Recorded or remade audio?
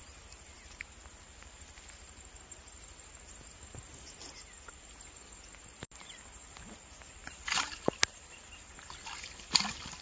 recorded